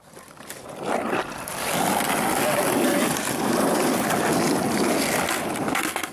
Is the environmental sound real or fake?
fake